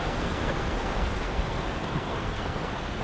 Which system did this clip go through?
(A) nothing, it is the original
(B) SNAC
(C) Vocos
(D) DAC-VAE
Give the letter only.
B